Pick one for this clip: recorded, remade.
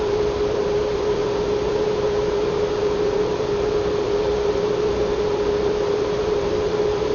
remade